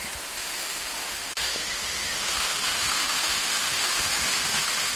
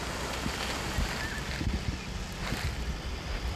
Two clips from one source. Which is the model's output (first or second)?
first